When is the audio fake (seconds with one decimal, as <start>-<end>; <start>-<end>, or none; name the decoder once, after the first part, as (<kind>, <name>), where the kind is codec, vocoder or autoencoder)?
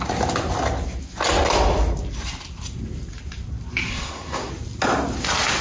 3.9-4.5 (codec, SNAC)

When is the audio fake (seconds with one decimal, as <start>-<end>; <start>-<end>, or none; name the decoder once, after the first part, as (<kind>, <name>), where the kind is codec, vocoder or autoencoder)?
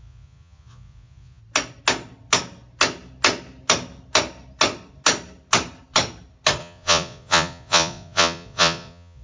0.0-1.4 (vocoder, Vocos); 6.6-9.2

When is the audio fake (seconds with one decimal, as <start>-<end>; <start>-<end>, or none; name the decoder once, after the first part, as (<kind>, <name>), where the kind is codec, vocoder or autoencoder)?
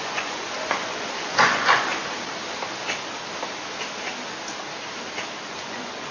0.0-1.9 (vocoder, Vocos); 5.4-6.1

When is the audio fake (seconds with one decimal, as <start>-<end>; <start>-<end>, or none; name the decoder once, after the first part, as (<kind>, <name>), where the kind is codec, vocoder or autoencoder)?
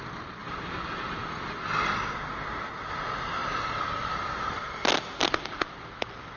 none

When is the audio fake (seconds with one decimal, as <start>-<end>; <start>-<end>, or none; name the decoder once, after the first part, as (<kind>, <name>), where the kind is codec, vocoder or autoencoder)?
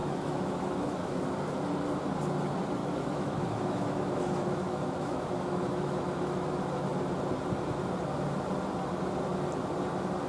0.0-1.2 (autoencoder, DAC-VAE); 2.8-6.5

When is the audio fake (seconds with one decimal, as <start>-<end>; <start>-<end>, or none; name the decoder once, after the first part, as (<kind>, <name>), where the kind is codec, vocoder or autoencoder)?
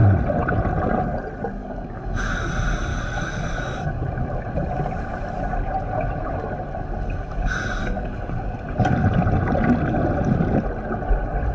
1.6-2.5 (codec, DAC); 2.9-4.0; 7.8-8.4